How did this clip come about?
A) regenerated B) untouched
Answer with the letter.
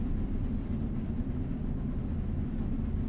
B